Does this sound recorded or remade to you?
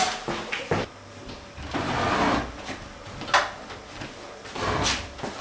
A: recorded